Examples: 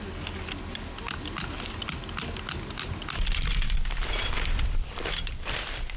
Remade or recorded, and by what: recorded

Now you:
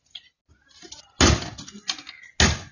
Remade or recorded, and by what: recorded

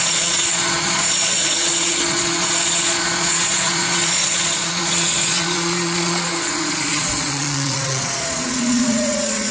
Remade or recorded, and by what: remade, vocoder, Vocos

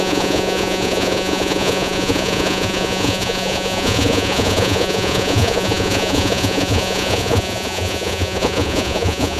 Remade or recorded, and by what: remade, vocoder, Vocos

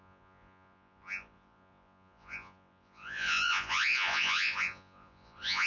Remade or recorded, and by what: remade, vocoder, Vocos